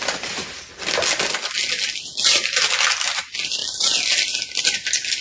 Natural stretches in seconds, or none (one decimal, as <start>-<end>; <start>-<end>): 0.0-5.2